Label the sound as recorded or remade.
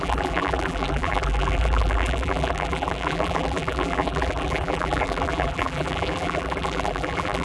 remade